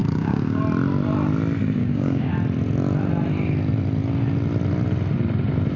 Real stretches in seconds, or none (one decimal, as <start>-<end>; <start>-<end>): 0.6-1.8; 2.3-5.8